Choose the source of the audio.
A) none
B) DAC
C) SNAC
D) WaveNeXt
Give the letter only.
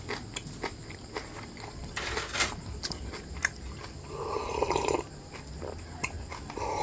A